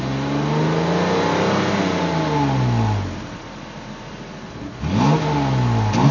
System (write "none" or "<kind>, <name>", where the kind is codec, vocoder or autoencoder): none